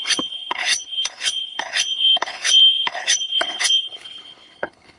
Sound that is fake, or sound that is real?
fake